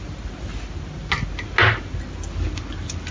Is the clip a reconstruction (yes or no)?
no